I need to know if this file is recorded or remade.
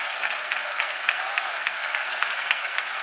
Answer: remade